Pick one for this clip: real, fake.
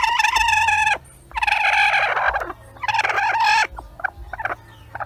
real